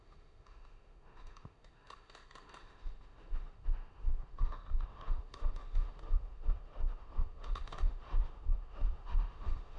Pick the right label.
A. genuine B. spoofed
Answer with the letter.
B